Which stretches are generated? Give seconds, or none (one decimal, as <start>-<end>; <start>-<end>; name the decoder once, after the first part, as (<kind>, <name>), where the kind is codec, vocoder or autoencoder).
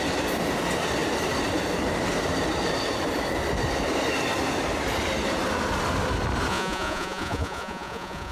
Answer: 6.5-8.3 (vocoder, Vocos)